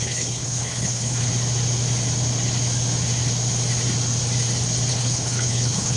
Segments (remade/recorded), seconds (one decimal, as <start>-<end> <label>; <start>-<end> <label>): 0.0-1.3 remade; 1.3-4.9 recorded; 4.9-6.0 remade